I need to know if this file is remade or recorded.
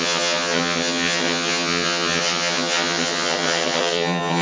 remade